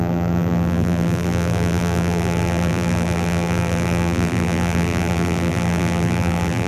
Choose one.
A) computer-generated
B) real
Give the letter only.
A